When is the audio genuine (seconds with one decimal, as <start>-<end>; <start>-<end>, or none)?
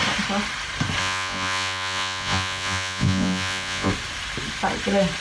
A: 0.0-1.0; 3.9-5.2